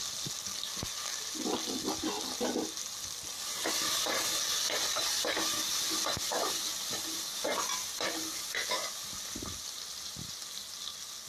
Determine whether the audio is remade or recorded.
recorded